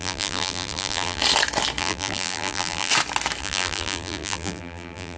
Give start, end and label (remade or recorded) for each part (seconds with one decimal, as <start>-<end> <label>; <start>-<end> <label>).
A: 0.0-1.2 remade; 1.2-1.8 recorded; 1.8-2.9 remade; 2.9-3.4 recorded; 3.4-5.2 remade